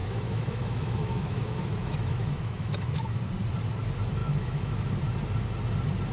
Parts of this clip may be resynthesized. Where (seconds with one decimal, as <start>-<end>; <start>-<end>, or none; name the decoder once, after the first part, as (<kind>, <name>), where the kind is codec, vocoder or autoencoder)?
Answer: 0.0-3.2 (autoencoder, DAC-VAE); 4.2-4.8